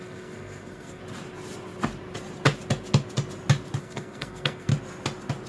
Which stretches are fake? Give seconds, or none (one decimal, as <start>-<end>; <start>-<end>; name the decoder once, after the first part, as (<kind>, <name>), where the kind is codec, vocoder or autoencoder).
0.0-1.0 (codec, SNAC); 3.8-4.7